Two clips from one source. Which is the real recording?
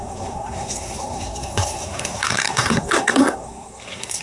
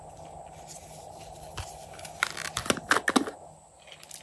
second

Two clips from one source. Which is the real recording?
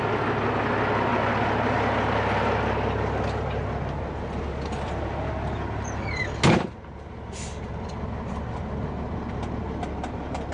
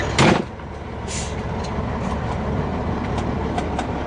first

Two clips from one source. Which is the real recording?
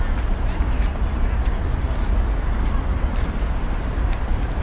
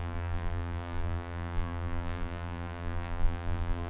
first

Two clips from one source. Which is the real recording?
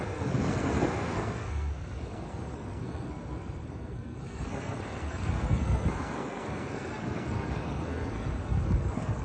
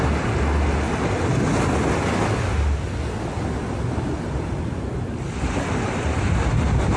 second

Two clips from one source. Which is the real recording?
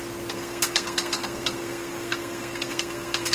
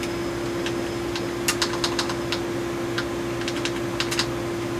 second